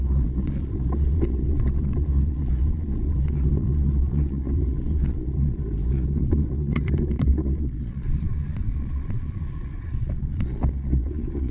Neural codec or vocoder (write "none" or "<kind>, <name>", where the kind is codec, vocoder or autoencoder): vocoder, Vocos